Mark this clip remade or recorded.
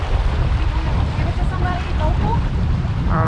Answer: remade